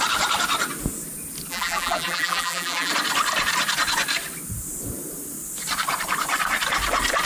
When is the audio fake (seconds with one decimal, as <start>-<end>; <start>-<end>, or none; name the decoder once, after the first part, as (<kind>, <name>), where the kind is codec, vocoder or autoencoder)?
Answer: 1.5-2.9 (vocoder, BigVGAN v2)